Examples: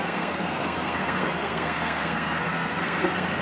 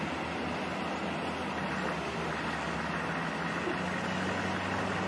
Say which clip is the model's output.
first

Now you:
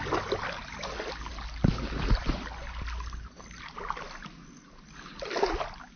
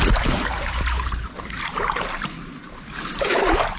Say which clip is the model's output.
second